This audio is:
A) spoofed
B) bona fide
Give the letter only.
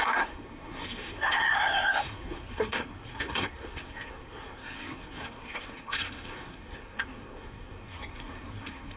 A